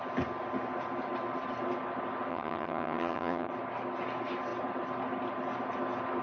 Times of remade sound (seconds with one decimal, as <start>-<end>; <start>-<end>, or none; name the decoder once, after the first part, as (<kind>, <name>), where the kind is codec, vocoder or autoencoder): 2.3-3.5 (vocoder, HiFi-GAN)